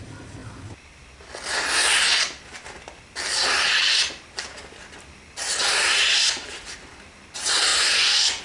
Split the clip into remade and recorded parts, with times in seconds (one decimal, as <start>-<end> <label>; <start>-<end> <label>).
0.0-7.7 recorded; 7.7-8.4 remade